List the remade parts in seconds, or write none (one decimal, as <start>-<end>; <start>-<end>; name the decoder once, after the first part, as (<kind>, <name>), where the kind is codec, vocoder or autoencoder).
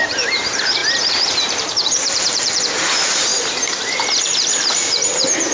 0.0-3.3 (vocoder, BigVGAN v2); 4.2-5.5